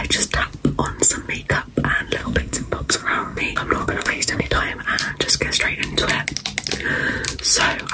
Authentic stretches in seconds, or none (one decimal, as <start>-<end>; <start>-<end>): 0.0-2.2; 3.4-3.8; 4.6-7.9